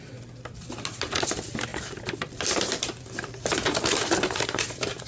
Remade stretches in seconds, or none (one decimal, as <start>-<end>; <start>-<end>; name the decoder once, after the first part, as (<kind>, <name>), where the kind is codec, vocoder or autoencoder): 1.7-5.1 (vocoder, BigVGAN v2)